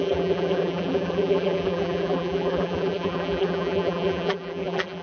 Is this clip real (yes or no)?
no